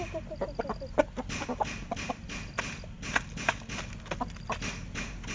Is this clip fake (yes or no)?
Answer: no